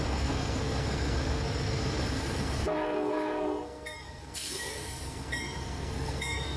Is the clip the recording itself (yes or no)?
no